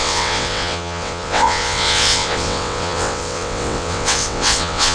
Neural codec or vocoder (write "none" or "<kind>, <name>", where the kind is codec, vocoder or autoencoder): vocoder, WaveNeXt